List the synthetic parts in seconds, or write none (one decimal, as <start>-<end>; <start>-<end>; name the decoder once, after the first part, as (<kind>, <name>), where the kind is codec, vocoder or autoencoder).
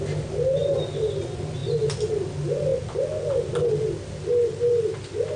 none